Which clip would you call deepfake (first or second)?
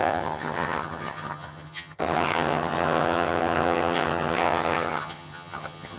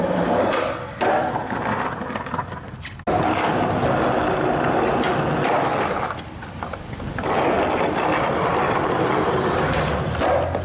first